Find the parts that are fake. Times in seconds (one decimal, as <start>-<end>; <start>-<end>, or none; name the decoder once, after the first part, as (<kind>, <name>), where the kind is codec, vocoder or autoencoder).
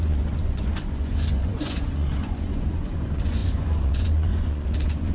0.0-5.1 (vocoder, Vocos)